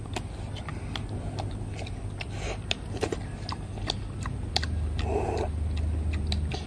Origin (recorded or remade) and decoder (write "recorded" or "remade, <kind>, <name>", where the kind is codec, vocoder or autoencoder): recorded